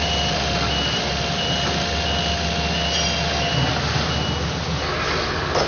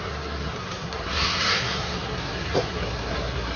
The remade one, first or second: second